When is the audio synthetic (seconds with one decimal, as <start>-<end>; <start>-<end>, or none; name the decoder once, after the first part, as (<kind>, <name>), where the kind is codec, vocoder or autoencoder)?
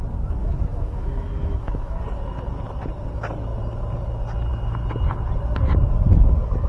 0.4-2.0 (autoencoder, DAC-VAE)